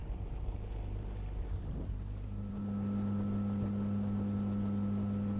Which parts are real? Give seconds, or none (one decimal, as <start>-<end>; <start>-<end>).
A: 0.0-5.4

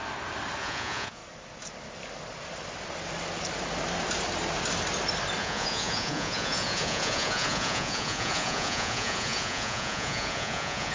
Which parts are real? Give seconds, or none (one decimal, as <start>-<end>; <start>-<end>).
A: 0.0-0.6; 1.2-5.4

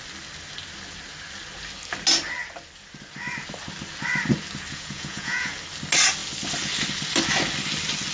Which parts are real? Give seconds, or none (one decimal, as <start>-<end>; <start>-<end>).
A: 0.0-4.7; 5.5-8.1